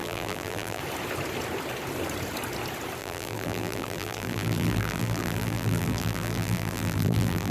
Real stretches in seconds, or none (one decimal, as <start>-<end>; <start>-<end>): 0.8-3.0